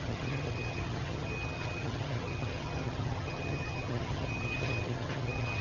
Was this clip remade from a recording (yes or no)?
yes